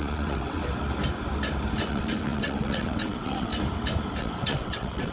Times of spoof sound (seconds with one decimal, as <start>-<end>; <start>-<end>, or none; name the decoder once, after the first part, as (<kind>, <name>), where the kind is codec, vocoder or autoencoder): 0.0-0.6 (vocoder, WaveNeXt); 1.9-3.5; 4.2-5.1